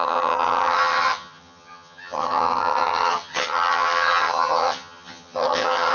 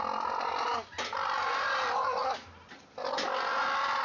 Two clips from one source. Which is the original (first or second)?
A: second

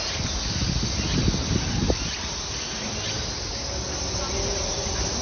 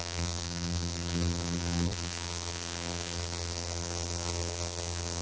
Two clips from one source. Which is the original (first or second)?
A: first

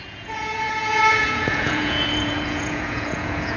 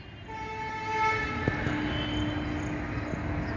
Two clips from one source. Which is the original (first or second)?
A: second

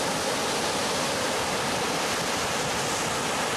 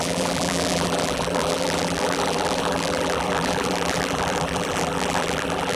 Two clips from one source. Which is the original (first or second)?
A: first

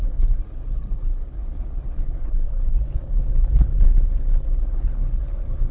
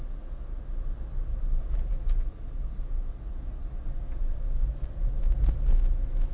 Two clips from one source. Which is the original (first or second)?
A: second